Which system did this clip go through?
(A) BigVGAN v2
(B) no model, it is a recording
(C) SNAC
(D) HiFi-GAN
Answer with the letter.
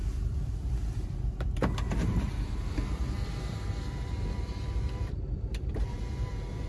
A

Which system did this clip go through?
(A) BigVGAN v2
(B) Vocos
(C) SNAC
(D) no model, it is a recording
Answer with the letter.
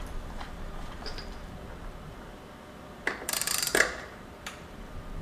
A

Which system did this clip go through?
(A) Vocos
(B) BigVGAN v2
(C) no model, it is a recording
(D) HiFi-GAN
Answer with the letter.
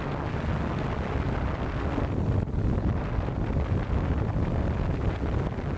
C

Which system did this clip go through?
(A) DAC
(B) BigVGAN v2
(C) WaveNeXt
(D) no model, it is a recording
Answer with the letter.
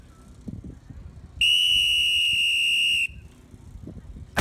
D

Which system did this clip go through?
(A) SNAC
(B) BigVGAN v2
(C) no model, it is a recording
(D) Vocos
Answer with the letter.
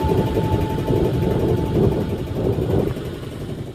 C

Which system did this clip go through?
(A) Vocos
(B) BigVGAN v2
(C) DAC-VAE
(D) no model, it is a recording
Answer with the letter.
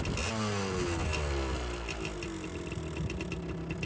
D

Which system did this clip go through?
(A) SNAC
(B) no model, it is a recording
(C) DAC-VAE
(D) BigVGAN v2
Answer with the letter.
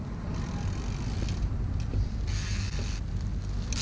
B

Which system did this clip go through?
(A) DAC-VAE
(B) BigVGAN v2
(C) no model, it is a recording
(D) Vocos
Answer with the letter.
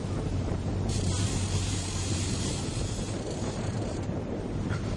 B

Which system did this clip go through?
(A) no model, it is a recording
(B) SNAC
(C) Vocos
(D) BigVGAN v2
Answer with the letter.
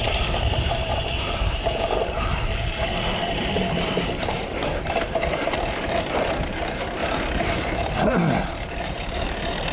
D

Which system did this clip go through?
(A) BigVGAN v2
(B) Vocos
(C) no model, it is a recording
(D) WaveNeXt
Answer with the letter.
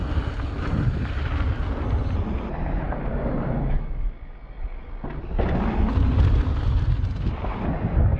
C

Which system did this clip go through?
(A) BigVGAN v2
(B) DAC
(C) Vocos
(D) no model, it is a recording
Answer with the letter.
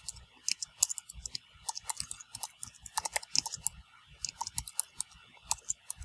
D